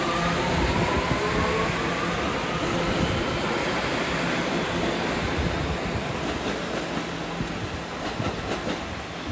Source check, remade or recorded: recorded